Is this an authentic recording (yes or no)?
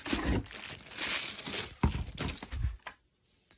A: yes